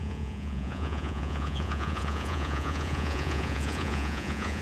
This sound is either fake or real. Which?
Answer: fake